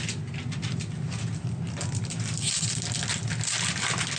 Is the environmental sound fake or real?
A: real